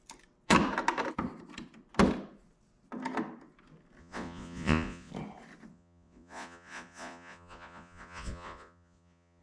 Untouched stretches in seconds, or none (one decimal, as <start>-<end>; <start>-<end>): 0.0-4.0; 5.1-5.7